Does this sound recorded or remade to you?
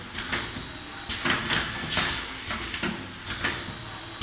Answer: recorded